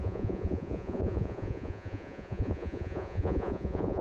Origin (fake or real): fake